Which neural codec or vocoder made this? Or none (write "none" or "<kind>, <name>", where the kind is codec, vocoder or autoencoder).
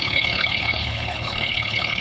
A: codec, HILCodec